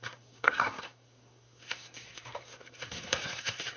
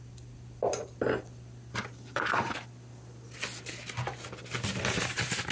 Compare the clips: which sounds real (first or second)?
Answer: second